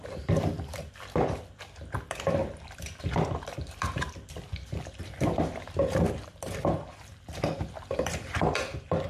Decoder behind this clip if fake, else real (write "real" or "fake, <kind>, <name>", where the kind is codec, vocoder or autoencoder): fake, vocoder, BigVGAN v2